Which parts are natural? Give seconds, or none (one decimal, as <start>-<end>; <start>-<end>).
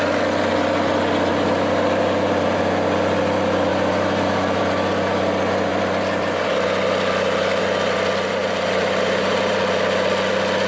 0.0-1.3; 2.6-3.7; 4.6-8.4; 9.6-10.7